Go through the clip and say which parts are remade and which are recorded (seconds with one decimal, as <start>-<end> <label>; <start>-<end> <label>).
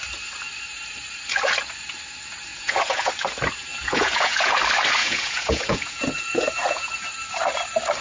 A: 0.0-2.5 recorded; 2.5-3.1 remade; 3.1-3.7 recorded; 3.7-4.5 remade; 4.5-5.0 recorded; 5.0-6.9 remade; 6.9-8.0 recorded